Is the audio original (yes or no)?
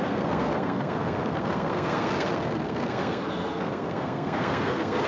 no